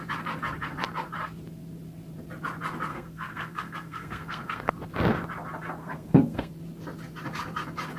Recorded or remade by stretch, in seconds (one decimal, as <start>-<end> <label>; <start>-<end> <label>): 0.0-2.9 recorded; 2.9-4.7 remade; 4.7-5.8 recorded; 5.8-6.5 remade; 6.5-8.0 recorded